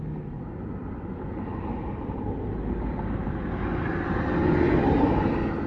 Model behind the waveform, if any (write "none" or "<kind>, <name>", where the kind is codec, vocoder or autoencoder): none